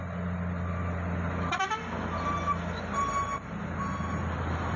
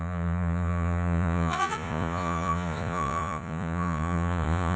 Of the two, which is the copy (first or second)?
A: second